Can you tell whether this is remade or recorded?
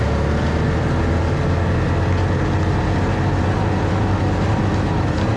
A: recorded